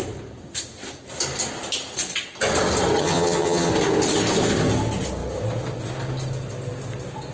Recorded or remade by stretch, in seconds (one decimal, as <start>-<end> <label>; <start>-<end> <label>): 0.0-3.0 recorded; 3.0-3.7 remade; 3.7-7.3 recorded